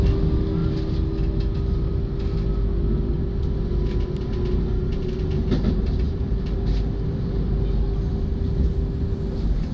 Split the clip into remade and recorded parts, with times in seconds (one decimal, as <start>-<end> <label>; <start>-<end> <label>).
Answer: 0.0-9.7 recorded